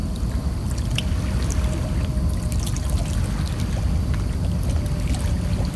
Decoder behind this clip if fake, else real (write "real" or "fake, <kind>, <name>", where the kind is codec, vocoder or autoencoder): real